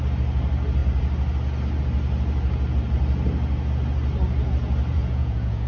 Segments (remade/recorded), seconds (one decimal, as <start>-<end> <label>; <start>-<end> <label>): 0.0-4.9 recorded; 4.9-5.7 remade